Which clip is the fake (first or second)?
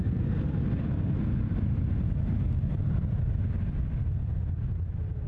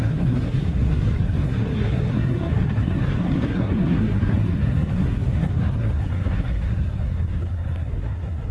second